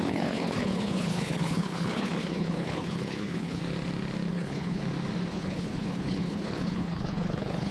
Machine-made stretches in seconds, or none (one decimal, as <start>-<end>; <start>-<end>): 0.0-3.6; 4.3-4.8; 5.3-7.7